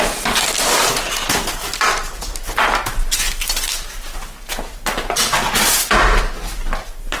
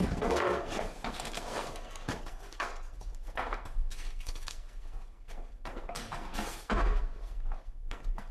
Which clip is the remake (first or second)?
second